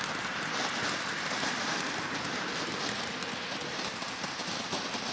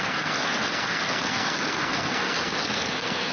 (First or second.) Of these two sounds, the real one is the first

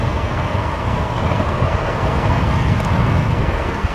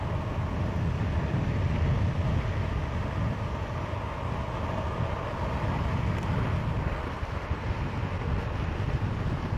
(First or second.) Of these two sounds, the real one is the second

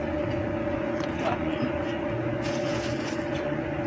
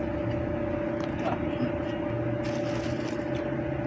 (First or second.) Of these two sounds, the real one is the second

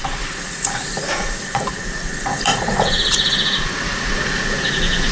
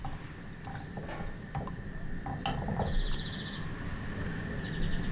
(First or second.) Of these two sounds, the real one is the second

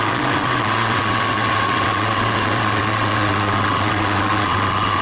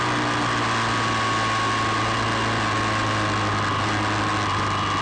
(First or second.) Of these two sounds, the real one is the second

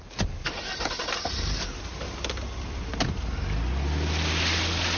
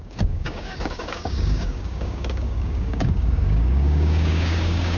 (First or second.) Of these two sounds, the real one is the first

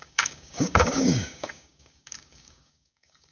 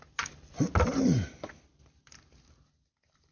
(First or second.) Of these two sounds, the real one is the second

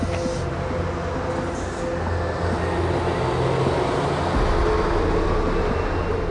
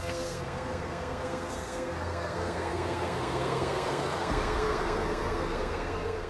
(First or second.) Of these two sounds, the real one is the first